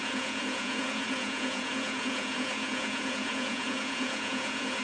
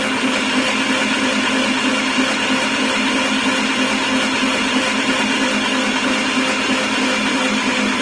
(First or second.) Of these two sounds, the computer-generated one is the first